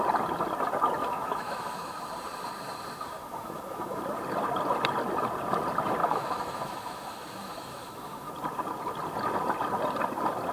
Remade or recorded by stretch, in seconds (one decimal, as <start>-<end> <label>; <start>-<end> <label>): 0.0-1.0 recorded; 1.0-2.0 remade; 2.0-3.2 recorded; 3.2-4.0 remade; 4.0-6.0 recorded; 6.0-8.3 remade; 8.3-10.5 recorded